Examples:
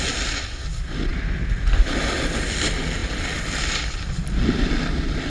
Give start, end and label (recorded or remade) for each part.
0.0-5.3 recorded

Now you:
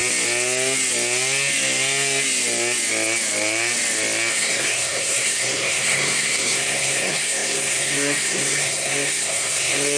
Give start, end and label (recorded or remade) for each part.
0.0-4.3 recorded; 4.3-10.0 remade

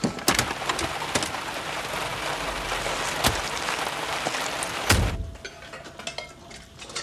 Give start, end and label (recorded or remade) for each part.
0.0-7.0 recorded

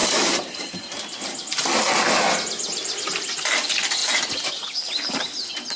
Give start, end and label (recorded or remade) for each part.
0.0-0.7 remade; 0.7-4.0 recorded; 4.0-4.5 remade; 4.5-5.8 recorded